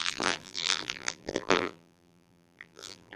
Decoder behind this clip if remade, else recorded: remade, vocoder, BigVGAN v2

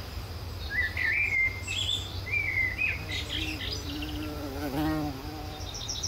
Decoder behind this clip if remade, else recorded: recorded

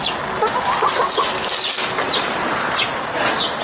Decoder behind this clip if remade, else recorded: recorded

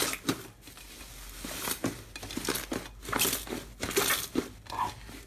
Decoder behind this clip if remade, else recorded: recorded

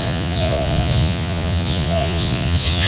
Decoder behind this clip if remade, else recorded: remade, vocoder, Vocos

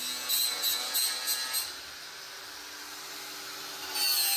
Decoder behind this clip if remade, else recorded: recorded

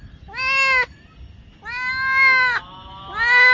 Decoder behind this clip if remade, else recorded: recorded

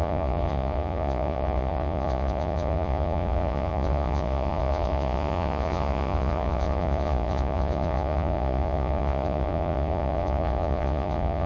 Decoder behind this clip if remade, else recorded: remade, vocoder, Vocos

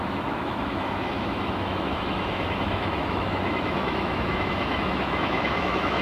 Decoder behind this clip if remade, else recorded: remade, autoencoder, DAC-VAE